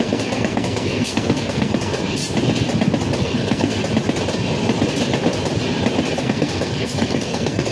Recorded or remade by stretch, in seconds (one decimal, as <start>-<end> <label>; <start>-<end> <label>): 0.0-2.2 remade; 2.2-3.2 recorded; 3.2-3.8 remade; 3.8-6.2 recorded; 6.2-7.7 remade